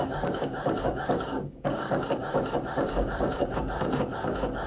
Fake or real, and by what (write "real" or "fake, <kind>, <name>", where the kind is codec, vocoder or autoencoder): fake, codec, DAC